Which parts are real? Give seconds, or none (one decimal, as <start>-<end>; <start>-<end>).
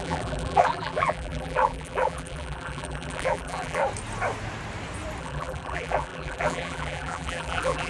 3.8-5.2